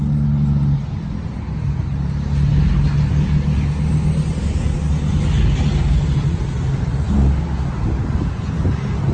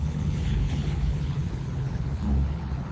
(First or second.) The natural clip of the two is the first